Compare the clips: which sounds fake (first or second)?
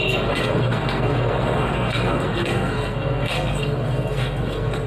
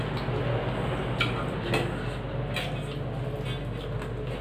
first